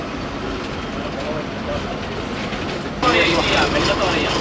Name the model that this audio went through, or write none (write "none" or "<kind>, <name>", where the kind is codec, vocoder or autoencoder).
none